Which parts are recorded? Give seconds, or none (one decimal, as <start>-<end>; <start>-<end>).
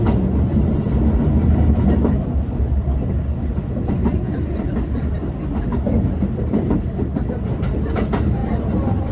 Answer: 0.0-9.1